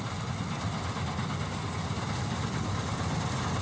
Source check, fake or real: real